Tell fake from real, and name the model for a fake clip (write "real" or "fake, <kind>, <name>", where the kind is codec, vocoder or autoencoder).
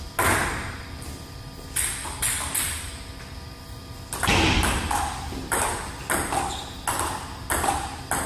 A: real